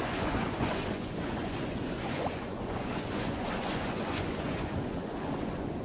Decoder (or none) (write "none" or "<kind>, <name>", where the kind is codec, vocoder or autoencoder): vocoder, Vocos